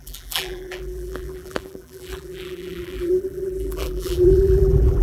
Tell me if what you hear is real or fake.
fake